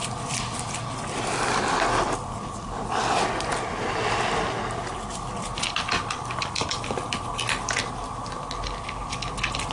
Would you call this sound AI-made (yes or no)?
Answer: no